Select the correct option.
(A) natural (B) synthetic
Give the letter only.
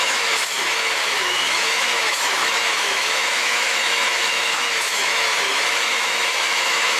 B